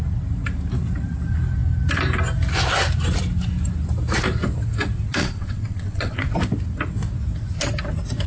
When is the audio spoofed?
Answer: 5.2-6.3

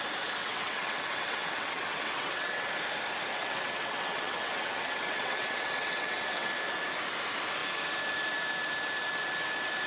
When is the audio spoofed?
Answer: 0.4-2.7; 3.3-6.5

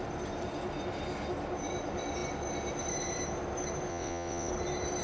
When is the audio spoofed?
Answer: 3.9-4.5

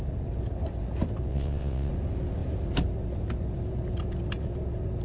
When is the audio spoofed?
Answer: 1.3-1.9

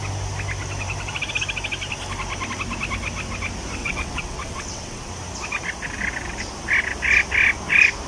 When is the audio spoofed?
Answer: 3.8-5.1

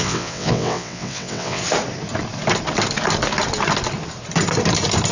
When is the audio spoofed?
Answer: 0.0-1.6

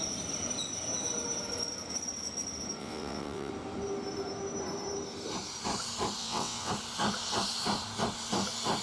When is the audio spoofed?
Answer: 2.8-3.5; 6.2-6.7

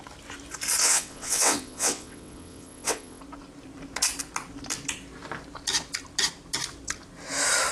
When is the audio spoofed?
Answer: 0.8-3.2